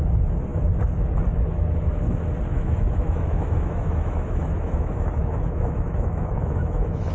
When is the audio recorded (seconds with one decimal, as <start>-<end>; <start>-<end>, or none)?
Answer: 0.0-2.5